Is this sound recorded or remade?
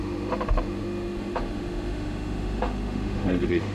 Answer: remade